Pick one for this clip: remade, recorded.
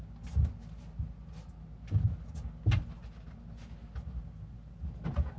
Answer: recorded